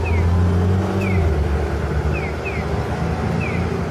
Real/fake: real